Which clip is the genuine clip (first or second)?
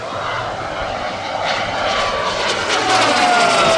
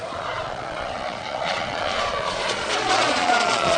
first